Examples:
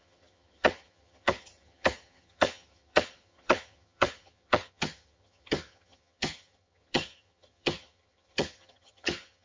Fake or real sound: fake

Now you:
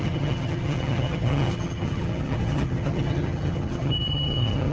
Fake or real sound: fake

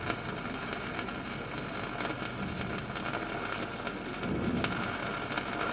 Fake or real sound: real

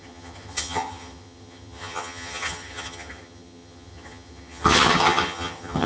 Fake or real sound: fake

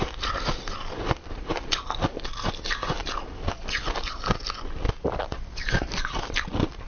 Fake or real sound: real